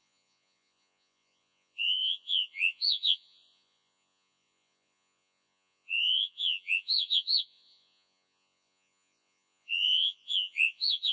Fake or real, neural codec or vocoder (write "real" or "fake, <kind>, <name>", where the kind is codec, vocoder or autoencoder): fake, vocoder, Vocos